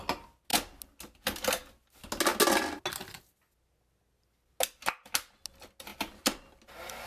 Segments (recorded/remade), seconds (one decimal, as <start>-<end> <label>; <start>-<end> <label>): 0.0-7.1 recorded